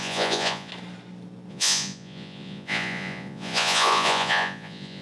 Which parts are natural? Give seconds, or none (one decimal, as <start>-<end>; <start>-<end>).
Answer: 0.7-1.5